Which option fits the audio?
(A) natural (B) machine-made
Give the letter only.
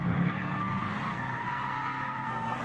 B